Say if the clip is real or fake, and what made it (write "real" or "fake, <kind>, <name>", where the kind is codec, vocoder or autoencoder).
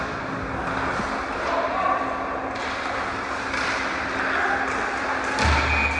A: real